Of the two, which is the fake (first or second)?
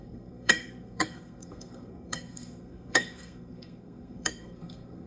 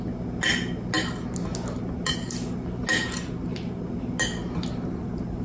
first